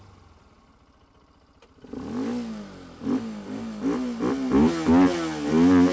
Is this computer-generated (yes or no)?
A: no